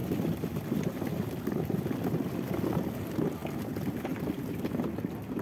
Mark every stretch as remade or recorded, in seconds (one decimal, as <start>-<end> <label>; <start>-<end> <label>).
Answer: 0.0-5.4 recorded